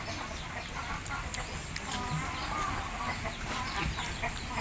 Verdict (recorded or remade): recorded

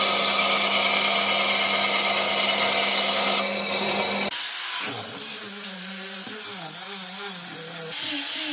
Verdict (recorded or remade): recorded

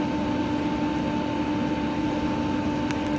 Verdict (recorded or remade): recorded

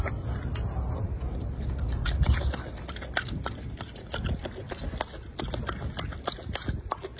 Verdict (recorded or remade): recorded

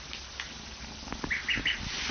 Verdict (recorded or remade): recorded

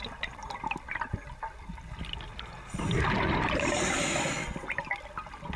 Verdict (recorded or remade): recorded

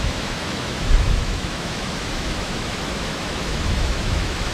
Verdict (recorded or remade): remade